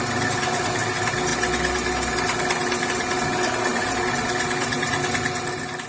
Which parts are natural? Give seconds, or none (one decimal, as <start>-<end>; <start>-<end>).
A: 0.0-5.9